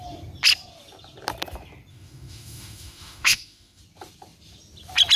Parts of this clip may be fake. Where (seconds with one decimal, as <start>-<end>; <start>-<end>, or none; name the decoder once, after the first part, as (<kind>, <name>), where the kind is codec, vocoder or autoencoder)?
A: 1.9-3.8 (autoencoder, DAC-VAE)